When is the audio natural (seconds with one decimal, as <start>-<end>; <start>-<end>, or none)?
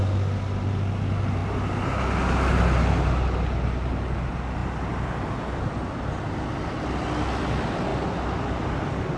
0.0-9.2